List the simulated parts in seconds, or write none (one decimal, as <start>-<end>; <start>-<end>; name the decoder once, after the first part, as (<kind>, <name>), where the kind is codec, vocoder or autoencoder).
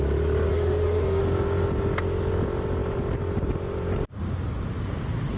0.5-1.2 (autoencoder, DAC-VAE)